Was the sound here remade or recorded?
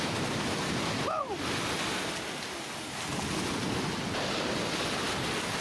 recorded